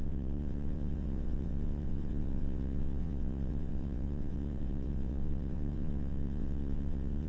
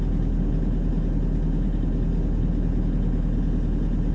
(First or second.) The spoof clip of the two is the first